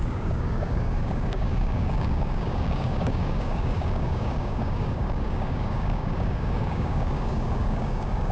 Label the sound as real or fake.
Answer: fake